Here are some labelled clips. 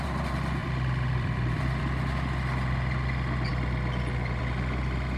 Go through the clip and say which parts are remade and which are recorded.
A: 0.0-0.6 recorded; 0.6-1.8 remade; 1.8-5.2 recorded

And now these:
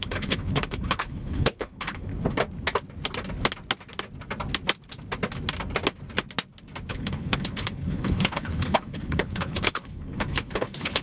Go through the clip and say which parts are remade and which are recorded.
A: 0.0-2.1 remade; 2.1-6.9 recorded; 6.9-11.0 remade

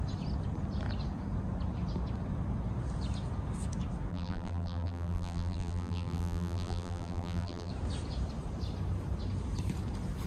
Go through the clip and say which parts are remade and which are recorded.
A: 0.0-4.1 recorded; 4.1-7.7 remade; 7.7-10.3 recorded

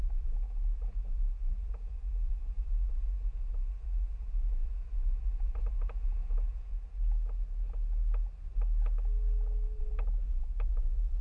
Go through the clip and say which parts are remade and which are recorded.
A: 0.0-6.7 remade; 6.7-9.8 recorded; 9.8-11.2 remade